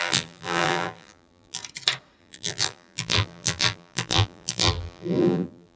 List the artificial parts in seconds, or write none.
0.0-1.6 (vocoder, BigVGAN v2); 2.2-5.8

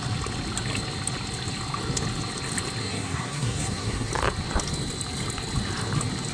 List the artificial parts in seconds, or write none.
2.8-4.1 (codec, SNAC)